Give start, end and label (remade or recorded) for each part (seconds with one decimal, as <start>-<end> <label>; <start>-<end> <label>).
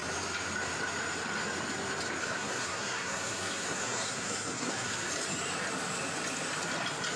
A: 0.0-2.2 recorded; 2.2-5.1 remade; 5.1-7.2 recorded